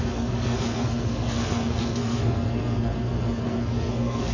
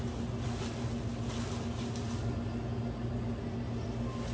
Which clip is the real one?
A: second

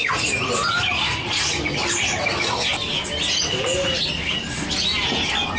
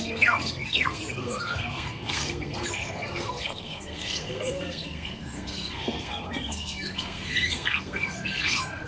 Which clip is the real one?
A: first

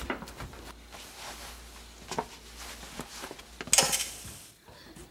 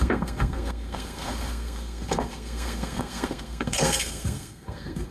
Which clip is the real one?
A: first